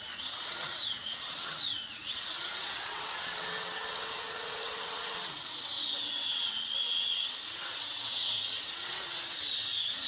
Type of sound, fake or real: fake